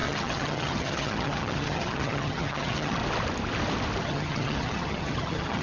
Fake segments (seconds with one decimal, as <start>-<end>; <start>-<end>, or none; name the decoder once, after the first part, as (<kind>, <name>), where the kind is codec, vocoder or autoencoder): 0.0-3.0 (vocoder, HiFi-GAN); 4.0-5.6